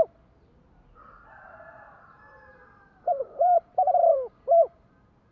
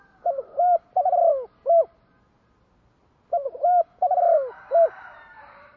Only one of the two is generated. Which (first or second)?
first